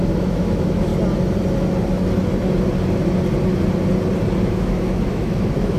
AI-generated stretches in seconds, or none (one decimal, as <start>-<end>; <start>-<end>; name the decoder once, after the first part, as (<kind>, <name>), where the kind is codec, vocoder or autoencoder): 0.0-0.9 (autoencoder, DAC-VAE); 4.4-5.8